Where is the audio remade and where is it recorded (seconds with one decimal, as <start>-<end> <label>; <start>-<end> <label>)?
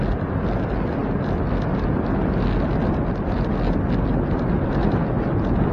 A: 0.0-5.7 recorded